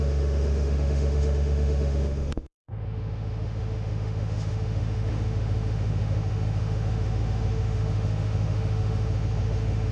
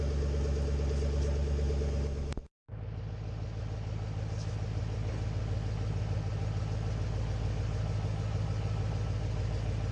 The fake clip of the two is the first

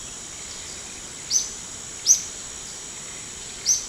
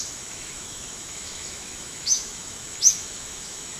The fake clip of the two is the second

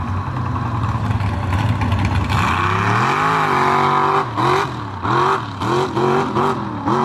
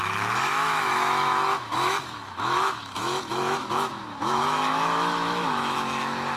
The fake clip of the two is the second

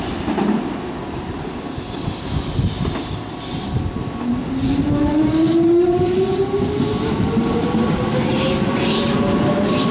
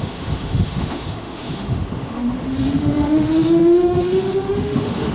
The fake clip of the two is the second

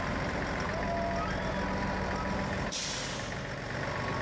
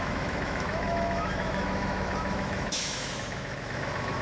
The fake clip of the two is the second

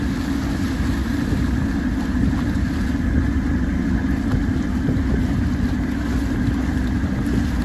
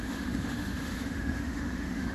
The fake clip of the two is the second